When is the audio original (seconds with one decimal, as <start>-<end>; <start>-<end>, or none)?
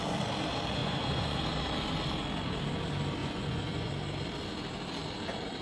0.0-0.8; 1.4-3.2; 3.9-5.6